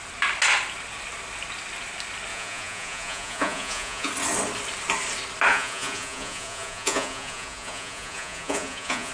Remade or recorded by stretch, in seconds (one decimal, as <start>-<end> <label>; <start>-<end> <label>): 0.0-2.3 recorded; 2.3-4.1 remade; 4.1-5.5 recorded; 5.5-9.1 remade